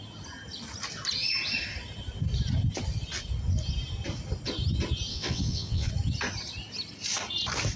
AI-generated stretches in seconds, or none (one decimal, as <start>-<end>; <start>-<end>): 5.1-5.9